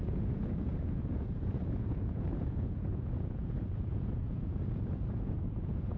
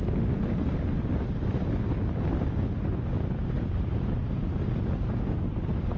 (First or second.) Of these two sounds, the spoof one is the first